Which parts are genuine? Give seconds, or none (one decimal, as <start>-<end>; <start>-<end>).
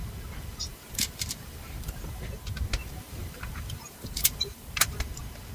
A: 0.0-0.7; 2.2-2.8; 5.0-5.5